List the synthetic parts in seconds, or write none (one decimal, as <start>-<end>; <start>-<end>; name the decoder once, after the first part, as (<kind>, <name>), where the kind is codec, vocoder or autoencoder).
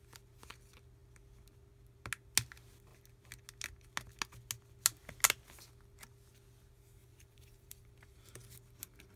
7.0-8.2 (vocoder, BigVGAN v2)